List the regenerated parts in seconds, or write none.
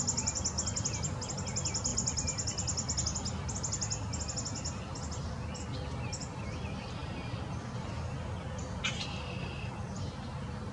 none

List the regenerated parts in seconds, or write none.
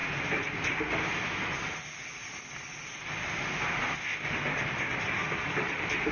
none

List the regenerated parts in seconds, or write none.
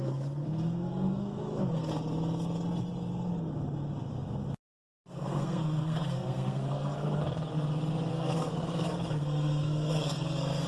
0.0-1.9 (codec, SNAC); 5.1-7.2; 8.1-10.7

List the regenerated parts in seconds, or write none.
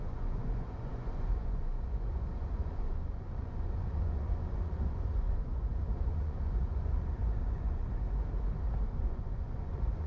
0.0-8.3 (vocoder, Vocos); 8.9-10.1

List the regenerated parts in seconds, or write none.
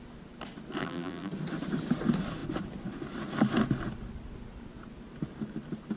0.8-1.3 (vocoder, BigVGAN v2)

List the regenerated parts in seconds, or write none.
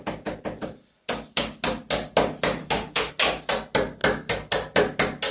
2.6-3.1 (autoencoder, DAC-VAE)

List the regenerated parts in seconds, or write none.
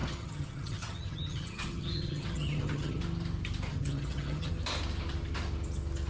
0.0-3.0 (vocoder, HiFi-GAN); 3.7-4.5